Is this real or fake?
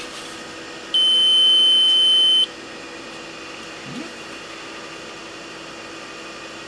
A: real